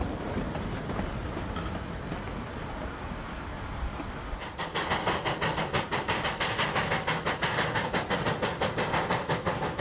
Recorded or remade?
recorded